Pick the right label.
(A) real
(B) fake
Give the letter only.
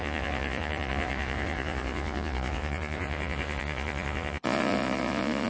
B